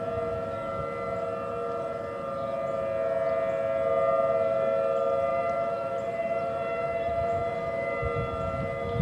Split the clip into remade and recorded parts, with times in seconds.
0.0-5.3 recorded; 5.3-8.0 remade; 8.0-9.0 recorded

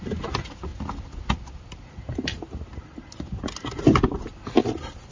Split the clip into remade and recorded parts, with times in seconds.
0.0-5.1 recorded

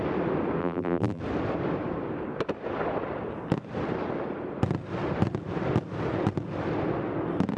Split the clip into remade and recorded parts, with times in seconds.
0.0-0.6 recorded; 0.6-1.2 remade; 1.2-7.6 recorded

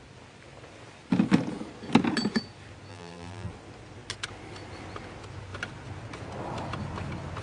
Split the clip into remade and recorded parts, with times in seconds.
0.0-2.9 recorded; 2.9-3.5 remade; 3.5-7.4 recorded

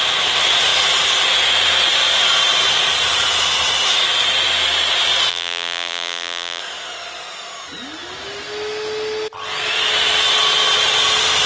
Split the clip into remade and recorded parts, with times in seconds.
0.0-5.3 recorded; 5.3-6.6 remade; 6.6-11.5 recorded

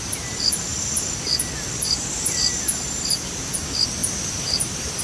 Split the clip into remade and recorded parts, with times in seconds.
0.0-2.5 recorded; 2.5-3.3 remade; 3.3-4.0 recorded; 4.0-5.0 remade